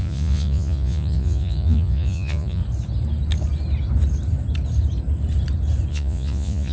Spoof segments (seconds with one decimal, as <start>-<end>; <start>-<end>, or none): 0.0-2.6; 5.9-6.7